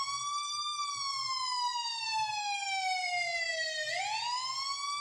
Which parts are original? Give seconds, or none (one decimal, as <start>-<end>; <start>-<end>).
0.0-1.7; 4.0-5.0